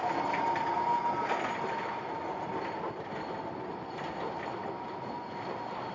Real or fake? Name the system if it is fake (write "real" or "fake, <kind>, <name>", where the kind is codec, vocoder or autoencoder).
real